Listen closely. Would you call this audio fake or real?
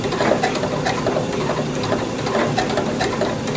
real